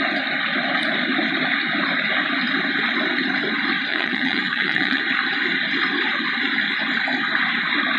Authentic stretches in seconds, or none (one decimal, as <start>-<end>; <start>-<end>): 0.0-3.9; 5.0-8.0